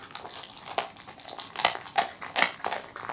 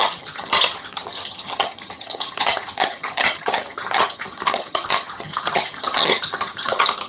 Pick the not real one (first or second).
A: second